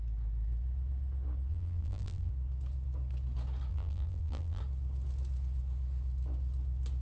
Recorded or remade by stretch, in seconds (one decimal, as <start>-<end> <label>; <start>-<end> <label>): 0.0-1.5 recorded; 1.5-2.3 remade; 2.3-3.7 recorded; 3.7-4.6 remade; 4.6-7.0 recorded